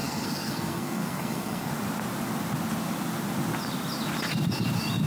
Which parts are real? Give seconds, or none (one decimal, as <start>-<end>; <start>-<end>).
1.7-5.1